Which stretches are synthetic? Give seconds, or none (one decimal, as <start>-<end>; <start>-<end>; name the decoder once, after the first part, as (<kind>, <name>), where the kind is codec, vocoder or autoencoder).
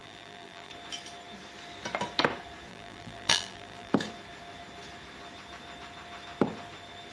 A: 0.0-0.7 (vocoder, BigVGAN v2); 2.7-3.9